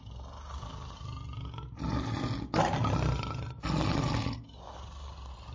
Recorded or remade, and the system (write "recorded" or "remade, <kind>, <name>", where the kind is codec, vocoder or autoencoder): recorded